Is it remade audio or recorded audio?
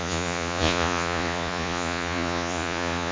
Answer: remade